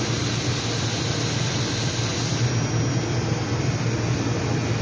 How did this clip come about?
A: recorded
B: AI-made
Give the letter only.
A